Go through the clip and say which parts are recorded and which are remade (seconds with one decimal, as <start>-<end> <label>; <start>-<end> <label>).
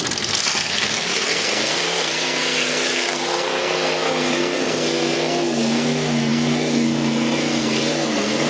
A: 0.0-8.5 remade